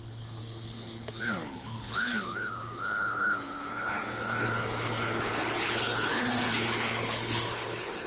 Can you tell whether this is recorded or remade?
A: remade